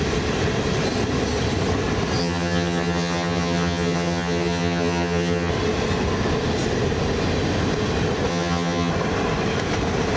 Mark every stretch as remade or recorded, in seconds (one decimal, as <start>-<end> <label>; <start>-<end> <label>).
0.0-2.2 recorded; 2.2-5.5 remade; 5.5-8.3 recorded; 8.3-8.9 remade; 8.9-10.2 recorded